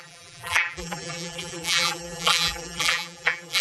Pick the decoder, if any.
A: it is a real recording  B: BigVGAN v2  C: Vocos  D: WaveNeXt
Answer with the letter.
B